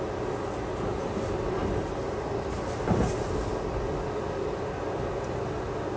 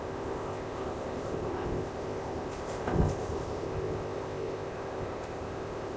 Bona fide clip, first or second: first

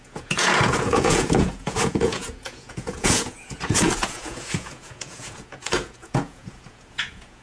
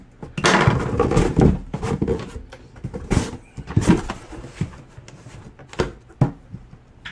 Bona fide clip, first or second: second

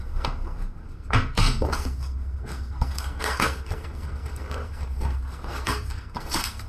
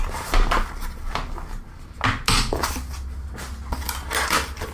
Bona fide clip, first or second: second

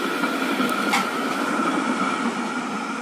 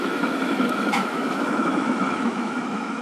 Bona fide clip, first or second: first